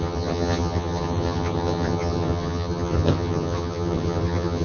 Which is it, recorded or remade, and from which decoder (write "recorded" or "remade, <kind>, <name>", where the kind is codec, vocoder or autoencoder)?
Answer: remade, vocoder, HiFi-GAN